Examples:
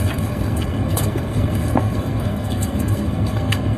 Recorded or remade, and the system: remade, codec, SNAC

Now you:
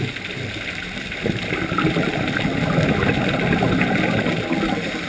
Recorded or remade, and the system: recorded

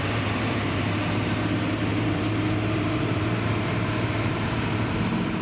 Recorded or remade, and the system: remade, vocoder, BigVGAN v2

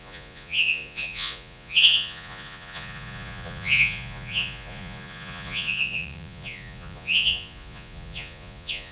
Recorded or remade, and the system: remade, vocoder, Vocos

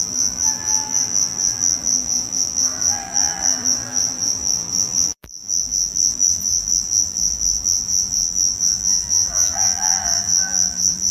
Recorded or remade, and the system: remade, vocoder, BigVGAN v2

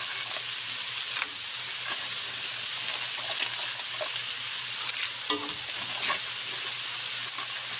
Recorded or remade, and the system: recorded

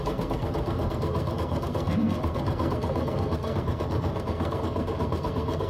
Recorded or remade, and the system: remade, codec, SNAC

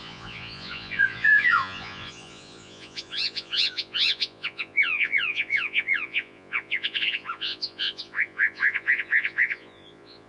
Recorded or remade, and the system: remade, vocoder, Vocos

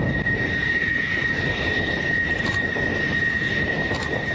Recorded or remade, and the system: recorded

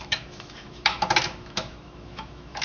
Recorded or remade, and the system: remade, autoencoder, DAC-VAE